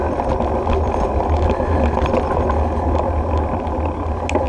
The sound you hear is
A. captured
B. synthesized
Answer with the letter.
A